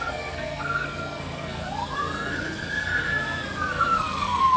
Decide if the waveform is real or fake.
fake